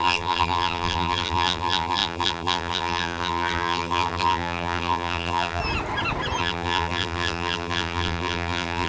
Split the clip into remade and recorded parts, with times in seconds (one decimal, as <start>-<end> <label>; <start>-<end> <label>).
0.0-5.6 remade; 5.6-6.4 recorded; 6.4-8.9 remade